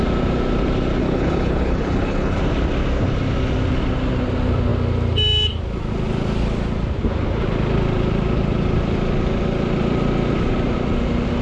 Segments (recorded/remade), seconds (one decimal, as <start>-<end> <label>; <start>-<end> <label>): 0.0-1.0 recorded; 1.0-2.4 remade; 2.4-11.4 recorded